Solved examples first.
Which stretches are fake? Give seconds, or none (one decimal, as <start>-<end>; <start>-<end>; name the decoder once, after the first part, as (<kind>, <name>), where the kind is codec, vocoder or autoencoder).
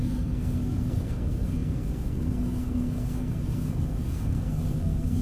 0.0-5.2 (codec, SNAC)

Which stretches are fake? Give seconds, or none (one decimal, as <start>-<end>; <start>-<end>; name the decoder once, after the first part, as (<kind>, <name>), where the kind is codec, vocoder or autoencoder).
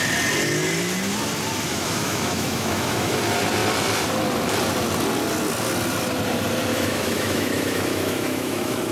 1.7-3.2 (autoencoder, DAC-VAE); 6.7-8.9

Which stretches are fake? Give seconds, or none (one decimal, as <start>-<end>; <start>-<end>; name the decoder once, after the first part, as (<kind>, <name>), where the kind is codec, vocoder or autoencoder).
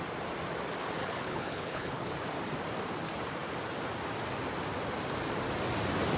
1.0-2.1 (codec, HILCodec)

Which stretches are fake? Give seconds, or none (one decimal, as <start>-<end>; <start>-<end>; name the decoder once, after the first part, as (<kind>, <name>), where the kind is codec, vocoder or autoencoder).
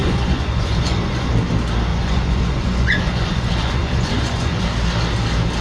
0.0-1.3 (vocoder, Vocos); 1.9-4.6